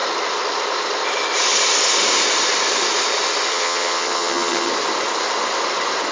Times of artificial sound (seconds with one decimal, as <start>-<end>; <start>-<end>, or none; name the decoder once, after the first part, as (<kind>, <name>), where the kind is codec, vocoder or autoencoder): 3.5-4.7 (vocoder, HiFi-GAN)